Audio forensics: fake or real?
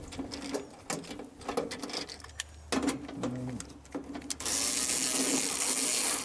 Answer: real